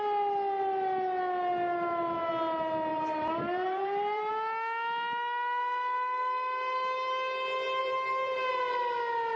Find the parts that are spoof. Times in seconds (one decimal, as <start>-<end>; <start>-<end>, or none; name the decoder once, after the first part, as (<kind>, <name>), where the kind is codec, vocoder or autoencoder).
2.9-4.3 (vocoder, BigVGAN v2); 7.8-8.5